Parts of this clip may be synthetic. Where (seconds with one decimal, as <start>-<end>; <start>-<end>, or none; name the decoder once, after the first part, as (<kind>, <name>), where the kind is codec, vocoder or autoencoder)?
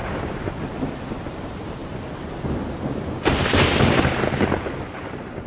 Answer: none